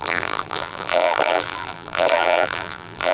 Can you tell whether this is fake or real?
fake